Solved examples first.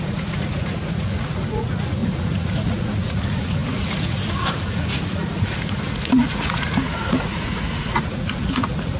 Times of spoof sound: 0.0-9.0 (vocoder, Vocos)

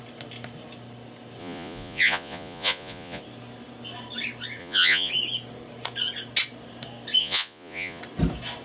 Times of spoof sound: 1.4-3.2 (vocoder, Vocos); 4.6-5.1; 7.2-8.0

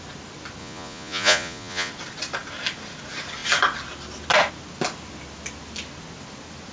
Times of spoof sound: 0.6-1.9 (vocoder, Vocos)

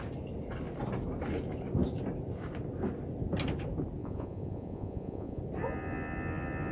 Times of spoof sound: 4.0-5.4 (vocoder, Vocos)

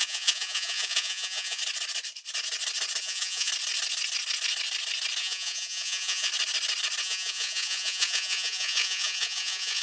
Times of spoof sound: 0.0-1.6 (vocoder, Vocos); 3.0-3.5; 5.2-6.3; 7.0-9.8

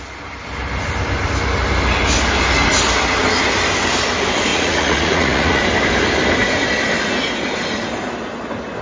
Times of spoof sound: 4.5-5.6 (vocoder, Vocos)